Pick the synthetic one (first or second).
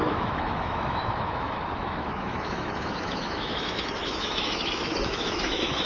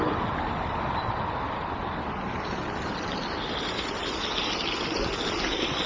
first